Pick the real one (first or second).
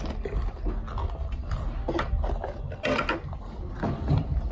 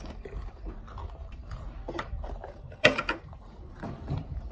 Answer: first